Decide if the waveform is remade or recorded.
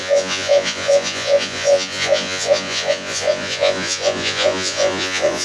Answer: remade